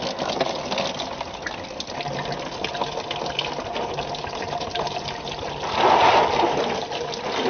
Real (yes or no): yes